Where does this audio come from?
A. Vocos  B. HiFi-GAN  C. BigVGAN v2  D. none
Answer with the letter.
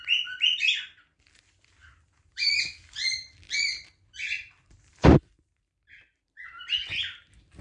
C